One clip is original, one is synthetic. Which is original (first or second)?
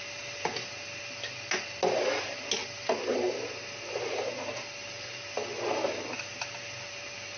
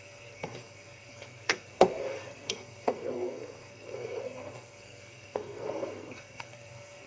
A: first